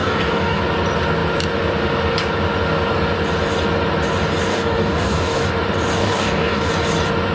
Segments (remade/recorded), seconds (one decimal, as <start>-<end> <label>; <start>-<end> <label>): 0.0-0.6 remade; 0.6-4.5 recorded; 4.5-5.5 remade; 5.5-6.0 recorded; 6.0-6.7 remade; 6.7-7.3 recorded